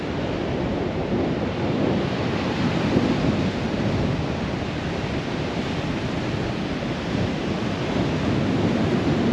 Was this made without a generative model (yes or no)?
yes